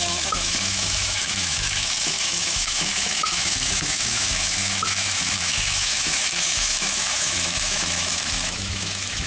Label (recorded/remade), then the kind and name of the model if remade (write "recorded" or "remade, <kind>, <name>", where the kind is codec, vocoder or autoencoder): remade, autoencoder, DAC-VAE